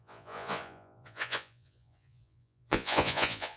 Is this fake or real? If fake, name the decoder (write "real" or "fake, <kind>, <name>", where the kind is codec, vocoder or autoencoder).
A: fake, vocoder, Vocos